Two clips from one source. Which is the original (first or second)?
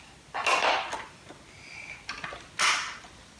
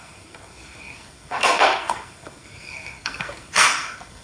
first